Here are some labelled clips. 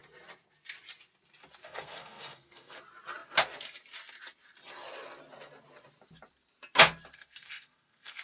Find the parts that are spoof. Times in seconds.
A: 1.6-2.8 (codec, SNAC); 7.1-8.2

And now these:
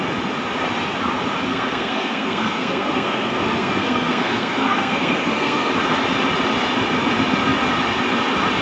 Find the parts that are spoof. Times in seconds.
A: 1.5-5.7 (codec, SNAC)